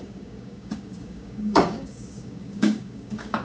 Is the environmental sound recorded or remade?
remade